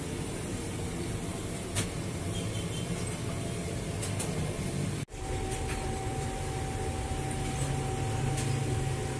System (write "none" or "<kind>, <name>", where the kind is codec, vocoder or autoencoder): none